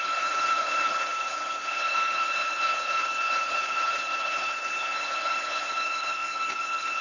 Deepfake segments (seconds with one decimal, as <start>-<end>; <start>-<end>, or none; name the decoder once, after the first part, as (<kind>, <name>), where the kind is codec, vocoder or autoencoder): 0.0-7.0 (codec, HILCodec)